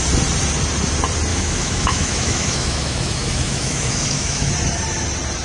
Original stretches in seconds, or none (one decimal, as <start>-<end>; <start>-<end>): 0.0-1.3; 4.5-5.4